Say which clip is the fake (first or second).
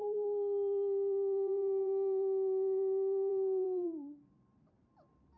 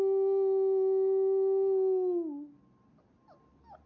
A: first